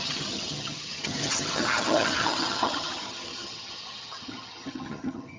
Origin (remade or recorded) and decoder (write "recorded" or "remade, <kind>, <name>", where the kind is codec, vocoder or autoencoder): remade, vocoder, HiFi-GAN